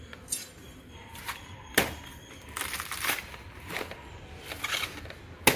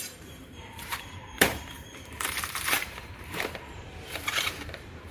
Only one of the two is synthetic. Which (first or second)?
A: second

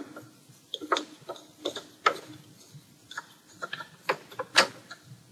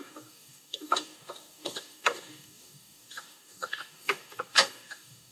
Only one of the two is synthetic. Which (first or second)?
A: second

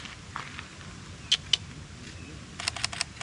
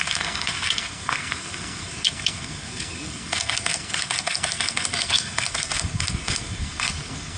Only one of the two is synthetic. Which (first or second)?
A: second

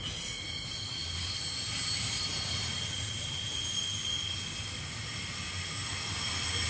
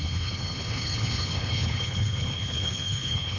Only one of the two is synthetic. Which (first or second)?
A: second